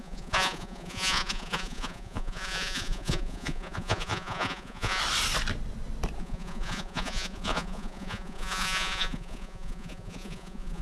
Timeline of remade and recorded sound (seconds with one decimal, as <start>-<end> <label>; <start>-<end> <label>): 0.0-5.0 remade; 5.0-6.2 recorded; 6.2-10.8 remade